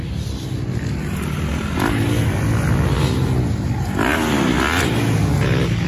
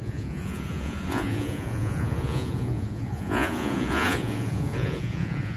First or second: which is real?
first